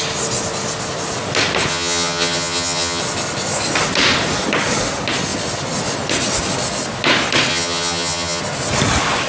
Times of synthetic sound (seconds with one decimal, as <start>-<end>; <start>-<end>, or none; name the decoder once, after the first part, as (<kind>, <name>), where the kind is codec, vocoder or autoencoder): 1.7-3.0 (vocoder, HiFi-GAN); 7.5-8.4